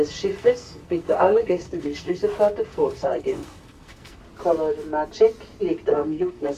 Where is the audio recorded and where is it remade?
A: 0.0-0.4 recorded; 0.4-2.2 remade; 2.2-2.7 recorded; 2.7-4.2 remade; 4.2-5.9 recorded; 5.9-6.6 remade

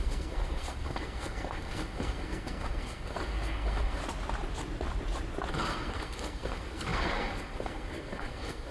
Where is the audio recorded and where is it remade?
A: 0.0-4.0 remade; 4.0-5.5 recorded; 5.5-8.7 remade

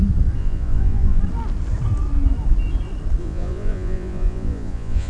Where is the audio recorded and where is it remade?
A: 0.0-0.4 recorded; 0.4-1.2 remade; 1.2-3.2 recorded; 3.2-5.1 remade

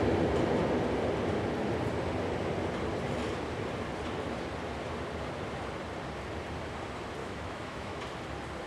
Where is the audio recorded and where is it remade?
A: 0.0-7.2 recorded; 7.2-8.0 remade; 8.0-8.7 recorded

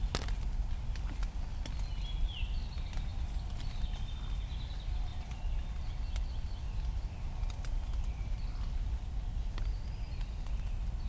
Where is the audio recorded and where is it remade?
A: 0.0-11.1 recorded

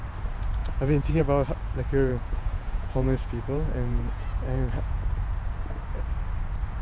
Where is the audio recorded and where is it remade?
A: 0.0-0.6 recorded; 0.6-1.2 remade; 1.2-2.1 recorded; 2.1-5.0 remade; 5.0-6.8 recorded